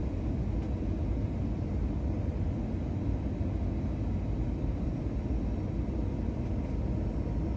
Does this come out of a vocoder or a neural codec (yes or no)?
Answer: no